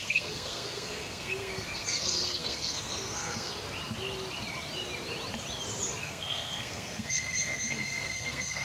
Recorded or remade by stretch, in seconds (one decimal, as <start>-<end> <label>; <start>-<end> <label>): 0.0-3.5 remade; 3.5-6.0 recorded; 6.0-8.6 remade